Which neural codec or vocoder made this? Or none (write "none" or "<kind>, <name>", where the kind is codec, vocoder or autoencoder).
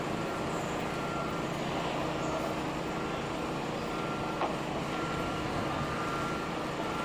none